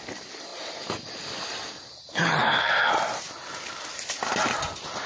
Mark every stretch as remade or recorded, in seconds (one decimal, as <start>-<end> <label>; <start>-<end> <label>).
0.0-2.4 recorded; 2.4-2.9 remade; 2.9-5.1 recorded